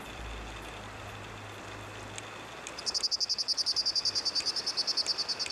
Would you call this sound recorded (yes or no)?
yes